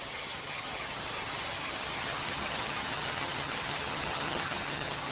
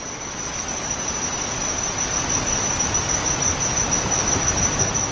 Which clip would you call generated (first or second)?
first